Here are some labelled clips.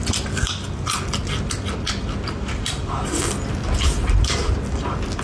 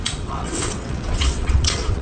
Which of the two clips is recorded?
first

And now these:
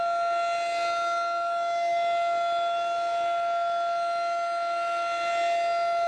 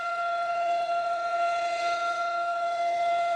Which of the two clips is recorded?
first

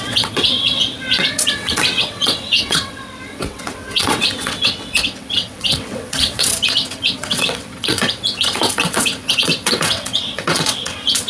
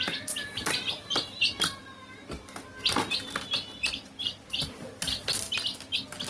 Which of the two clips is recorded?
second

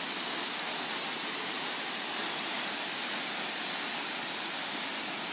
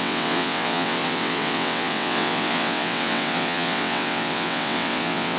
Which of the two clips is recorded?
first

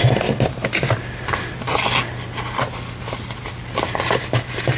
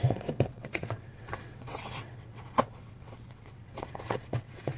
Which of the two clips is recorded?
first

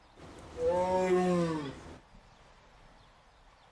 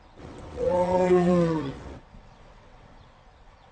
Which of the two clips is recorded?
first